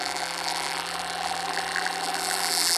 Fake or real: fake